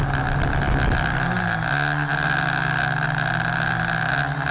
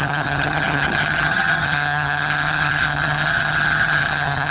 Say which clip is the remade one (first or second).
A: second